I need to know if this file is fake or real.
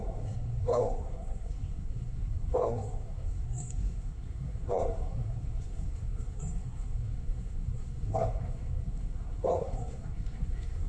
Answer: fake